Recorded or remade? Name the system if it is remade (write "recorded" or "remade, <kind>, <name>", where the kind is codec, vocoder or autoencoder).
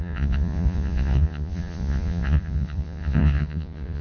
remade, vocoder, Vocos